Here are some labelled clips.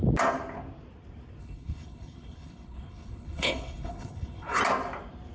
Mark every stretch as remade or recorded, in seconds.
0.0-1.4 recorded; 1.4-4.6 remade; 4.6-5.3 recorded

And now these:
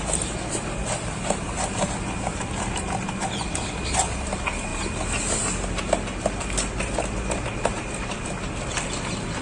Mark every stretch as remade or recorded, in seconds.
0.0-9.4 recorded

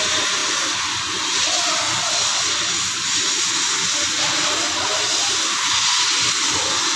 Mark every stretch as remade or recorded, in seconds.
0.0-7.0 recorded

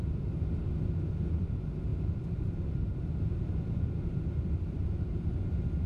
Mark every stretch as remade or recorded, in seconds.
0.0-5.9 recorded

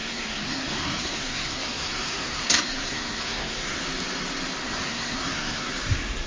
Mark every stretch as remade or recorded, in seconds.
0.0-3.8 remade; 3.8-4.6 recorded; 4.6-5.7 remade; 5.7-6.3 recorded

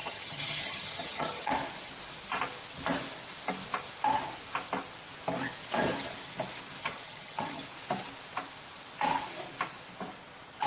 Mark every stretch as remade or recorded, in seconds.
0.0-1.5 remade; 1.5-6.8 recorded; 6.8-7.6 remade; 7.6-10.7 recorded